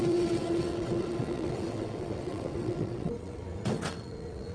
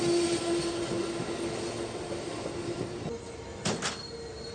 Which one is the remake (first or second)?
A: first